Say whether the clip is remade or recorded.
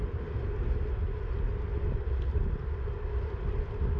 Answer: recorded